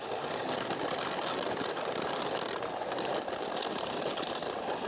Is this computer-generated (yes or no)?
no